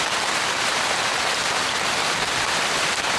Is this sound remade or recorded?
remade